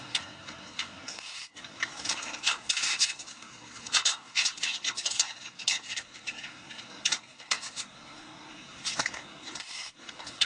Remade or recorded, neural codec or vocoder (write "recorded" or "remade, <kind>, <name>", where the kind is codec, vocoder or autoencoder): remade, codec, SNAC